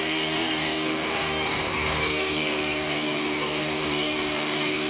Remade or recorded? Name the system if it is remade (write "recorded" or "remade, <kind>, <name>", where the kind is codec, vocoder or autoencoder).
remade, codec, DAC